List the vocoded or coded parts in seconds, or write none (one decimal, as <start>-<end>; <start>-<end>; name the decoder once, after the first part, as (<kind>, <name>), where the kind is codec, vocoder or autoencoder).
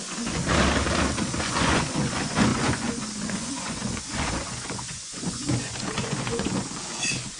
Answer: 0.0-0.4 (vocoder, Vocos); 1.4-7.4